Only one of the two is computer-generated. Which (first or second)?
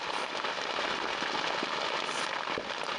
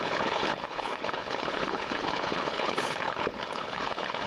second